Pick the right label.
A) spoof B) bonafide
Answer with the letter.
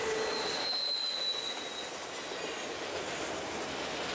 B